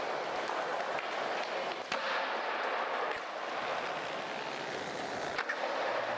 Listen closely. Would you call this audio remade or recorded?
recorded